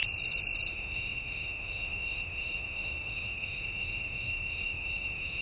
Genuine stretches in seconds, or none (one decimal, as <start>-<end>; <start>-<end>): 0.0-0.7